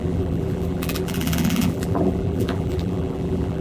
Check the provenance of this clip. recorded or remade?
remade